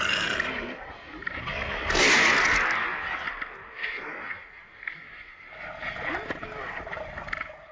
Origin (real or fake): real